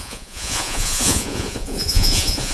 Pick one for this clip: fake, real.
fake